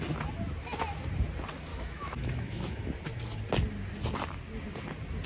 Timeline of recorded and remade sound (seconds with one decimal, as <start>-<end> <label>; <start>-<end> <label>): 0.0-1.7 recorded; 1.7-2.9 remade; 2.9-5.3 recorded